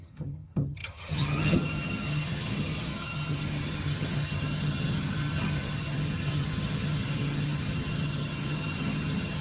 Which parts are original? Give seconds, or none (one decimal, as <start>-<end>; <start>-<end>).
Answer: none